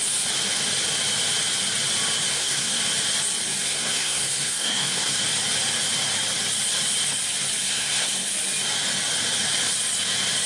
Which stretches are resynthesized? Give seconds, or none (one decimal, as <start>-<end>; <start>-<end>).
2.3-2.8; 3.6-5.2; 7.6-8.3